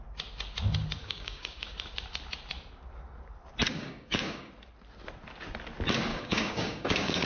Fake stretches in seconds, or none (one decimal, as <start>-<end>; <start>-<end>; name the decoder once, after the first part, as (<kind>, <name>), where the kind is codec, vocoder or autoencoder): 1.0-1.7 (codec, DAC); 3.7-4.5; 6.1-7.3